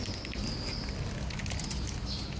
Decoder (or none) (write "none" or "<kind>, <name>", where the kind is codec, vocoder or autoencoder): none